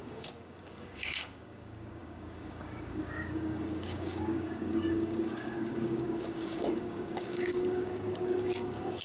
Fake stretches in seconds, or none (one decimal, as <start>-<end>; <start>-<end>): 0.0-9.0